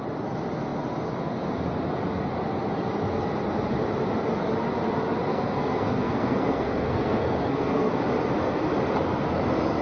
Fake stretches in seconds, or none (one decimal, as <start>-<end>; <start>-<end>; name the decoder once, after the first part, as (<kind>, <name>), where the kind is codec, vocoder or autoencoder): 5.3-7.9 (codec, SNAC)